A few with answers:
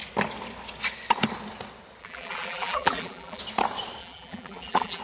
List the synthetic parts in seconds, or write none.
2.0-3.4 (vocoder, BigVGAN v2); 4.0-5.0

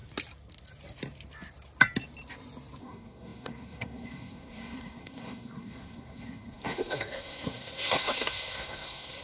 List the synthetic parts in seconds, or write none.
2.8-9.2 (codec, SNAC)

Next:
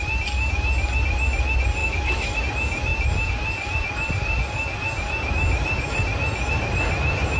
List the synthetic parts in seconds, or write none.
1.8-2.4 (autoencoder, DAC-VAE)

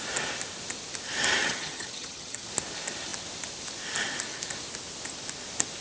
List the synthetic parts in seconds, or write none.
1.4-2.5 (vocoder, HiFi-GAN)

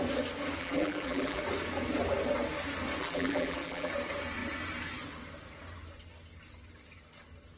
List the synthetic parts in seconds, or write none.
0.6-1.4 (vocoder, BigVGAN v2); 3.0-3.9

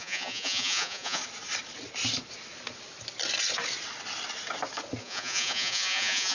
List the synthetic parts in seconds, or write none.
0.0-1.2 (vocoder, Vocos); 5.0-6.3

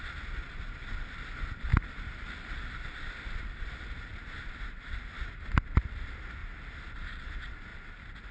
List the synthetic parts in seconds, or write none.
1.7-5.0 (vocoder, BigVGAN v2); 6.4-6.9; 7.7-8.3

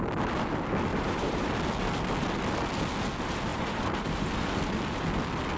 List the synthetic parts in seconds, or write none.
0.9-1.5 (vocoder, BigVGAN v2); 3.5-4.3